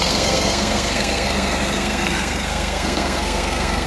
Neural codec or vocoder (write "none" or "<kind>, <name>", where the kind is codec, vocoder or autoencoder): codec, SNAC